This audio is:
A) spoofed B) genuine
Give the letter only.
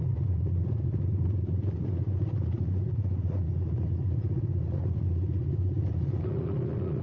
A